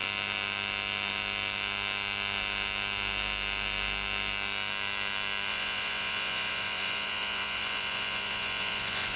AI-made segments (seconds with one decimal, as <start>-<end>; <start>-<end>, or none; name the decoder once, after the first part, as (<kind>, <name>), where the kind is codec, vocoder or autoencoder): 5.5-9.2 (vocoder, Vocos)